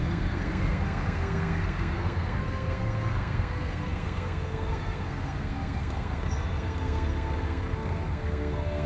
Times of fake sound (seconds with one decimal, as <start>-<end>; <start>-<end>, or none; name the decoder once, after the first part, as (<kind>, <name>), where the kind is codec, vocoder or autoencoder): 0.0-8.9 (codec, SNAC)